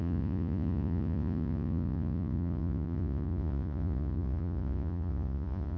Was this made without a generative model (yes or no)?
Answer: no